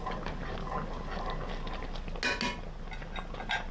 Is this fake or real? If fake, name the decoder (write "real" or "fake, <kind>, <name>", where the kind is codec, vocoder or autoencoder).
real